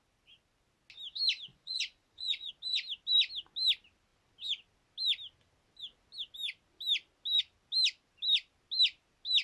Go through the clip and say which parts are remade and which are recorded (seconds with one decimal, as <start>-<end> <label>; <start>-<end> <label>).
0.0-1.5 recorded; 1.5-2.5 remade; 2.5-9.4 recorded